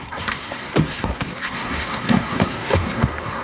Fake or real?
fake